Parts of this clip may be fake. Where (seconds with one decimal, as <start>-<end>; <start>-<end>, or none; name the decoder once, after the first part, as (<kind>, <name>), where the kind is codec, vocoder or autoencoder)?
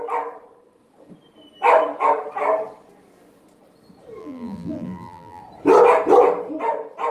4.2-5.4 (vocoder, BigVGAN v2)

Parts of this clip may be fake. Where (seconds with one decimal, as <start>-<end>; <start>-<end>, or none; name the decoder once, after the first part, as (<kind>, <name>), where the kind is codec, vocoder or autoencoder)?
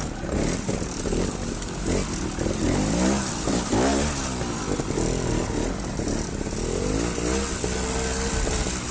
none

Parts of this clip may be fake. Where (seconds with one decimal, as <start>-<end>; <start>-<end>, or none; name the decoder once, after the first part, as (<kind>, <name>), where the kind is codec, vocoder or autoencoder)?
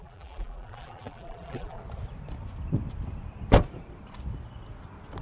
0.0-1.8 (vocoder, BigVGAN v2)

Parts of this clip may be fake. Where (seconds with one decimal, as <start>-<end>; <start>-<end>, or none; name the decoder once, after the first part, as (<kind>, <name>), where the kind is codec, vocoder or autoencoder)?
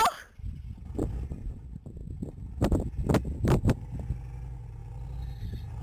none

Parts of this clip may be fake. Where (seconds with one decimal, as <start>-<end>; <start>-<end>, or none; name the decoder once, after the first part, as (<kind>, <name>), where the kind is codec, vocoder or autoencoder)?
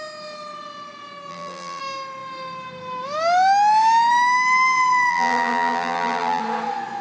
1.3-1.8 (vocoder, BigVGAN v2); 5.1-6.4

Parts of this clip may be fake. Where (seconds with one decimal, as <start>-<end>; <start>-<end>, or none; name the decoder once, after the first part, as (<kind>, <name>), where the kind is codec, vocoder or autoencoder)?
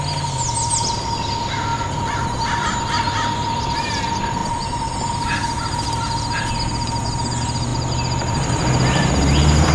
1.7-3.0 (vocoder, BigVGAN v2); 4.4-4.9; 7.7-9.1